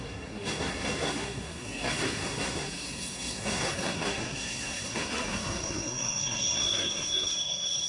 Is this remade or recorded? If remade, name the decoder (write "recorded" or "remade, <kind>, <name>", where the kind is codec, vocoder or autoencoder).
remade, codec, SNAC